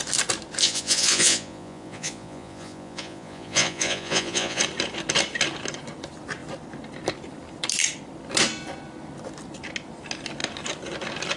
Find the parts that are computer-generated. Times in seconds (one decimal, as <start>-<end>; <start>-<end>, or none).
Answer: 0.6-4.6

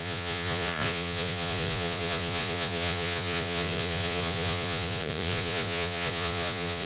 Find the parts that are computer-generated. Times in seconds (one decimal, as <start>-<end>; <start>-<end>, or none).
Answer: 0.0-6.9

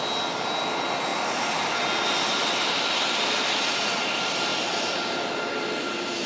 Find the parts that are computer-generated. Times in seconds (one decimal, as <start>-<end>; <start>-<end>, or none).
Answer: none

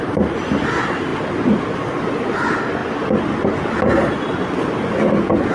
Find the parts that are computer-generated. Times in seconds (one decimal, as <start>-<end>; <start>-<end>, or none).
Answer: none